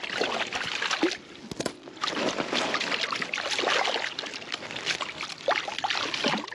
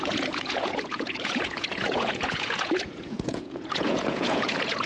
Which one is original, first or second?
first